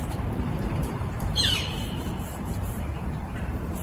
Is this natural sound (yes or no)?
no